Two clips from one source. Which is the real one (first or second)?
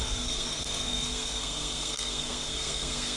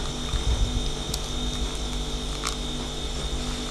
second